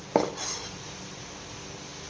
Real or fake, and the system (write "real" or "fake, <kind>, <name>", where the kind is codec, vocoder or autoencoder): real